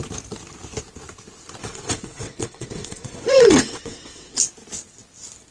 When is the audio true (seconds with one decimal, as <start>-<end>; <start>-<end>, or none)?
0.0-1.6; 4.4-5.5